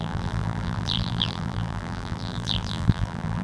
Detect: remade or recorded remade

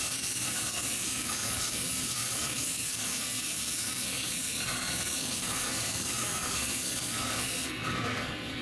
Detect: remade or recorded remade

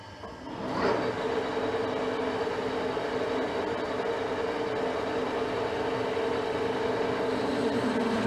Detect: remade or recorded recorded